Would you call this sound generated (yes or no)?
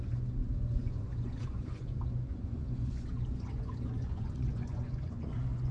yes